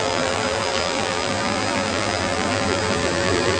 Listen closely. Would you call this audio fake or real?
fake